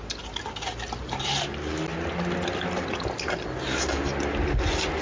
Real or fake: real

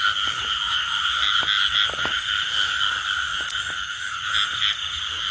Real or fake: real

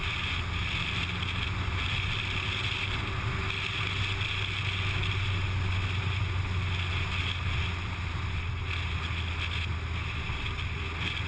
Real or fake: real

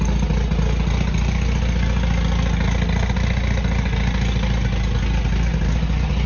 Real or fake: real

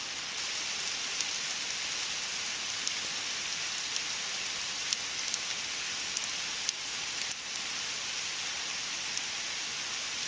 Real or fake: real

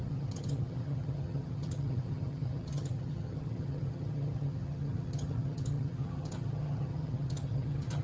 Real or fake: fake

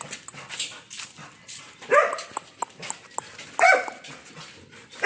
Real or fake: real